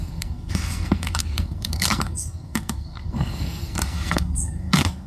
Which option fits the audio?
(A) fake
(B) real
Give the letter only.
A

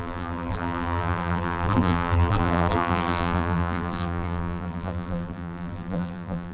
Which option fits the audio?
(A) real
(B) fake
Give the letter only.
B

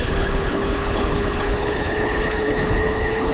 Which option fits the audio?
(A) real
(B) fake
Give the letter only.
B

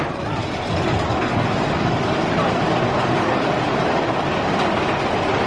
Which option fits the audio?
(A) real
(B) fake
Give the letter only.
A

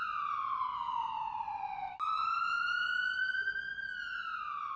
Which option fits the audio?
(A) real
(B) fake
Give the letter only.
A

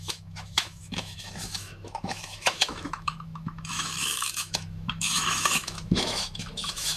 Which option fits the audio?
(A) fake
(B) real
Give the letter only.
A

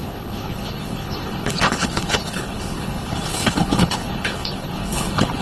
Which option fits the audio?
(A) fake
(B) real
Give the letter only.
A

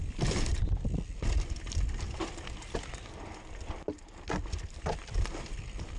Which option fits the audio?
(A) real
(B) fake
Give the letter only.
A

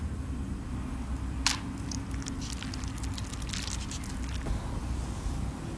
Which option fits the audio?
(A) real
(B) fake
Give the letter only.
A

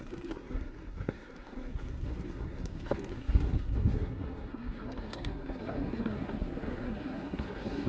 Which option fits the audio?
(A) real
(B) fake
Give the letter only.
B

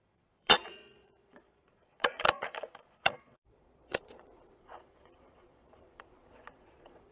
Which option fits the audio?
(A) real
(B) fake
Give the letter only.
B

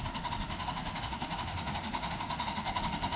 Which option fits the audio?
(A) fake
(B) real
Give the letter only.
A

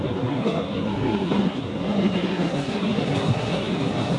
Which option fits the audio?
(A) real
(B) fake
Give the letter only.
B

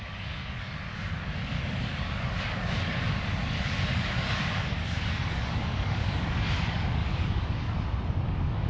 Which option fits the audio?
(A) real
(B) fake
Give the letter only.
B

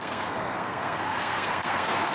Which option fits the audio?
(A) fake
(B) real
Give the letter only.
A